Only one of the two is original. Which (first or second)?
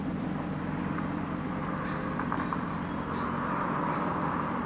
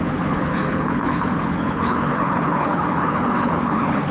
first